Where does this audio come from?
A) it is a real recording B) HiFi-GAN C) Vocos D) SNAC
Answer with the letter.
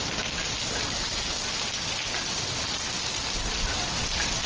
A